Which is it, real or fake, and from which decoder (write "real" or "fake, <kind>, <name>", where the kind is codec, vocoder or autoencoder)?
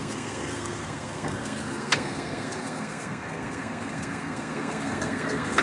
fake, codec, SNAC